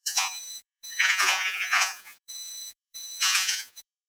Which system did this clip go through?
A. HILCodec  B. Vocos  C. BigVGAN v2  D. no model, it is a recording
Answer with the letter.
B